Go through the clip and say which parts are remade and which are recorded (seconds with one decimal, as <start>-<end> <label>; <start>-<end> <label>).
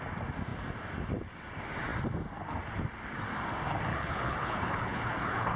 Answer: 0.0-3.9 recorded; 3.9-5.6 remade